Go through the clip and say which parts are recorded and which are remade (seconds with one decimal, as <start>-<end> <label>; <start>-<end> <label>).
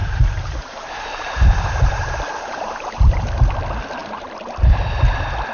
0.0-3.0 remade; 3.0-4.0 recorded; 4.0-4.9 remade; 4.9-5.5 recorded